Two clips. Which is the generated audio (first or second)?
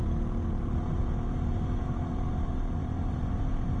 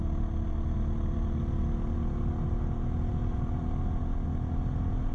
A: first